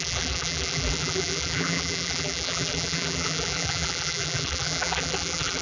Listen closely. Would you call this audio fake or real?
fake